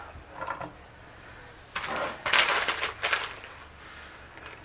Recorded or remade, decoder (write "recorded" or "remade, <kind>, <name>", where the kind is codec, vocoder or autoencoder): recorded